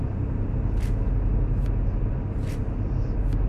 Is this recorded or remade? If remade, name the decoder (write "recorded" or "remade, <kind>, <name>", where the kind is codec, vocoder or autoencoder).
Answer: recorded